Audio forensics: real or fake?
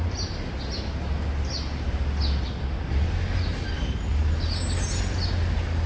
real